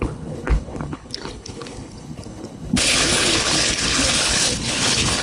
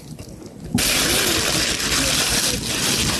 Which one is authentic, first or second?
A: second